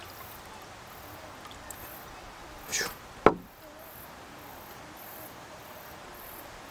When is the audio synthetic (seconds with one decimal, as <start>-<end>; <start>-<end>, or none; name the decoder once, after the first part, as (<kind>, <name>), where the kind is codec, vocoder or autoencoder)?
4.5-6.0 (vocoder, BigVGAN v2)

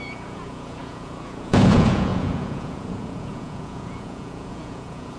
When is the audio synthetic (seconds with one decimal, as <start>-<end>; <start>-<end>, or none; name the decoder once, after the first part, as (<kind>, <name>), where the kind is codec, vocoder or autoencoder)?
0.0-5.2 (vocoder, Vocos)

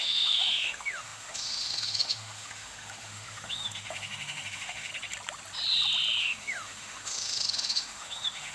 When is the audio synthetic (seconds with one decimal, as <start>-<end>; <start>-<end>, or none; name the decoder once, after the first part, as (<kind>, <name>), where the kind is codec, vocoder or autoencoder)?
0.0-4.9 (autoencoder, DAC-VAE); 6.2-8.5

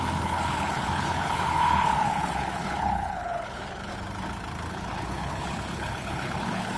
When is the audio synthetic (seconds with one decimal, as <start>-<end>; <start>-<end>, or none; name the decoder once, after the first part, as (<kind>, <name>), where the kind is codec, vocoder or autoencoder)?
0.0-3.9 (codec, HILCodec); 4.7-6.8

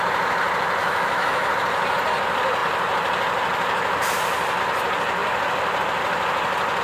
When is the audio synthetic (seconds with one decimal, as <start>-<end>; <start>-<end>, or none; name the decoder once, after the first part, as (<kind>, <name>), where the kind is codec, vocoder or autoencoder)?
0.8-1.5 (autoencoder, DAC-VAE)

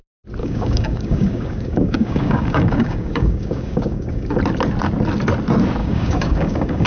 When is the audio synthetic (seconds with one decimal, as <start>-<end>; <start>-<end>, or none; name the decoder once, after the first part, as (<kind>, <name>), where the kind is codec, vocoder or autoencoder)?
0.4-4.4 (codec, DAC); 5.8-6.9

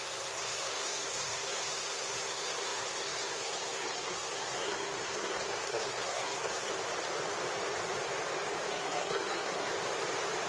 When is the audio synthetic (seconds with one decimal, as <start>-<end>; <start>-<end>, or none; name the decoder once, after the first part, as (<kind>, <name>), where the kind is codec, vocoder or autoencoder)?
0.0-6.7 (codec, SNAC); 8.7-9.7